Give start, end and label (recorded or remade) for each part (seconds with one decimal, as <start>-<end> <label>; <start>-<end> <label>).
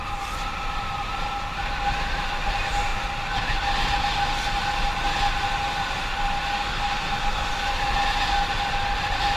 0.0-6.5 recorded; 6.5-7.5 remade; 7.5-9.4 recorded